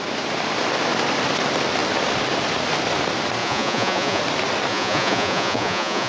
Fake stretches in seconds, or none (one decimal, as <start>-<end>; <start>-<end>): 3.4-4.2; 4.7-6.1